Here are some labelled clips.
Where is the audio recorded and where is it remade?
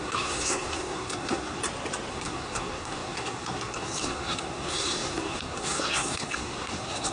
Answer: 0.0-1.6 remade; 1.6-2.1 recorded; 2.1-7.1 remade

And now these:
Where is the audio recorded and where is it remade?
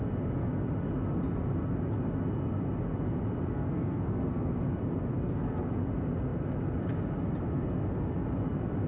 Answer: 0.0-3.5 recorded; 3.5-4.5 remade; 4.5-5.1 recorded; 5.1-5.7 remade; 5.7-8.9 recorded